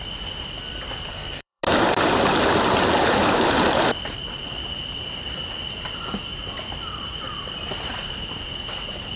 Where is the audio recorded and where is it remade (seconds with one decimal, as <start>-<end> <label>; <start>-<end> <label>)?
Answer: 0.0-1.1 recorded; 1.1-1.6 remade; 1.6-9.2 recorded